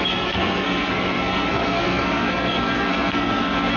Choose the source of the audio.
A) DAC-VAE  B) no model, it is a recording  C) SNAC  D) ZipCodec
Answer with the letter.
C